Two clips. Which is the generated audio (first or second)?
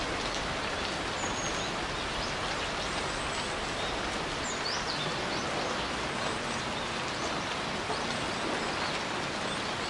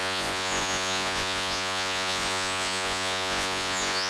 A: second